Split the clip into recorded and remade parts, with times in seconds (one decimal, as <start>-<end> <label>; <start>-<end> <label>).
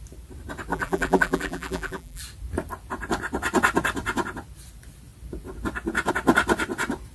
0.0-0.7 recorded; 0.7-2.2 remade; 2.2-7.1 recorded